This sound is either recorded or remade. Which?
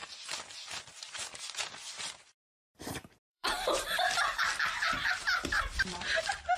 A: remade